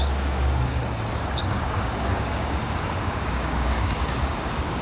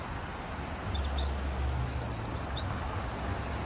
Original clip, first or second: second